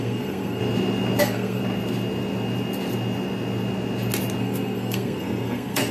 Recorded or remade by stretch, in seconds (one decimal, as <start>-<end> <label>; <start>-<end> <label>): 0.0-0.6 remade; 0.6-1.2 recorded; 1.2-1.6 remade; 1.6-4.4 recorded; 4.4-5.9 remade